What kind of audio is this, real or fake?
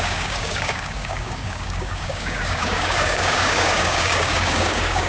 fake